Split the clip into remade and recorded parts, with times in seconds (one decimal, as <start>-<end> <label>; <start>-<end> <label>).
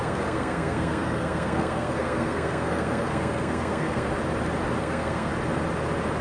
0.0-4.1 remade; 4.1-4.8 recorded; 4.8-5.3 remade; 5.3-6.2 recorded